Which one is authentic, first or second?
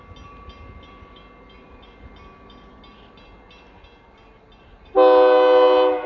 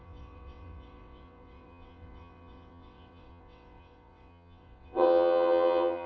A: first